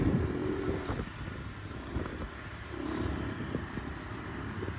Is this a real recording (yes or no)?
no